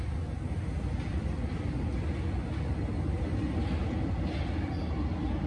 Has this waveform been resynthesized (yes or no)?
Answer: no